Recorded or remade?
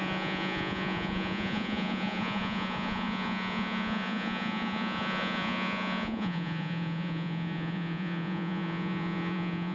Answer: remade